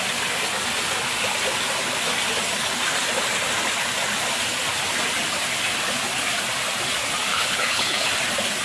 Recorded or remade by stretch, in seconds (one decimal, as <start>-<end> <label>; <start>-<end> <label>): 0.0-7.3 recorded; 7.3-8.1 remade; 8.1-8.6 recorded